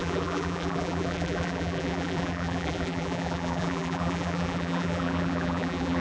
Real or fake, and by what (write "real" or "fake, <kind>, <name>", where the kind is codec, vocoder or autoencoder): fake, vocoder, BigVGAN v2